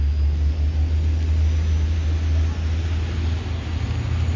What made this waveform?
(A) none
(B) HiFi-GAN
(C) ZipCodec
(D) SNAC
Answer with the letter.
A